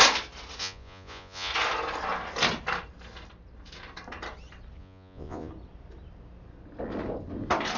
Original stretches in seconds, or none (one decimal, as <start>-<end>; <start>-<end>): 0.0-0.6; 1.5-4.8; 5.5-7.8

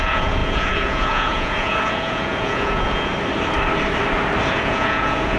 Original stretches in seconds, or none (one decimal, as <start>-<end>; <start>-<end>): 3.1-4.5